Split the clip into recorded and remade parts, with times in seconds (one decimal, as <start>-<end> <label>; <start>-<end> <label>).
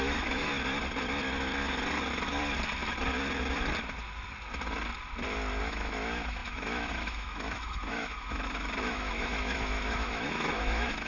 0.0-0.5 remade; 0.5-5.6 recorded; 5.6-11.1 remade